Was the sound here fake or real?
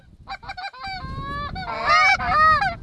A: real